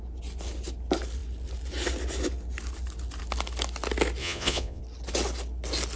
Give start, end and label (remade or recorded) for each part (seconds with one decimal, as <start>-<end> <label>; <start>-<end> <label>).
0.0-4.2 recorded; 4.2-4.8 remade; 4.8-6.0 recorded